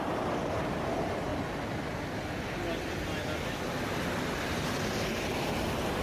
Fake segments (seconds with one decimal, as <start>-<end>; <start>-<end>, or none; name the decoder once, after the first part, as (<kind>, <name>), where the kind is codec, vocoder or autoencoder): 0.0-1.3 (vocoder, BigVGAN v2); 4.9-6.0